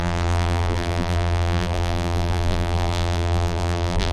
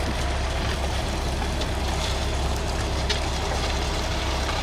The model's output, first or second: first